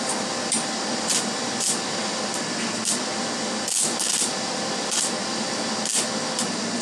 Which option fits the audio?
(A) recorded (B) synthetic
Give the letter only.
B